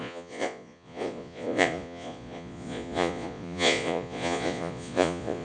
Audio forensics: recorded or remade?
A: remade